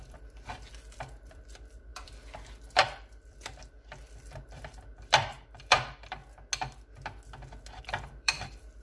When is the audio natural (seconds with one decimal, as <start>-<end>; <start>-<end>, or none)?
6.2-7.8